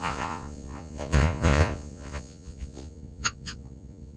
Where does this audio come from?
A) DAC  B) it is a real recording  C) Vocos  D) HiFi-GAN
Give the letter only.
C